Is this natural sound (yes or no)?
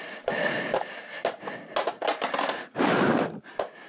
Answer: yes